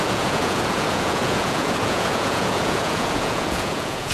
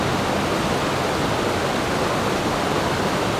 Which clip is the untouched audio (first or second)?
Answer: second